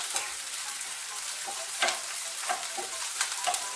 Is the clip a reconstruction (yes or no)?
yes